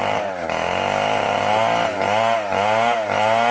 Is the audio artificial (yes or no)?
no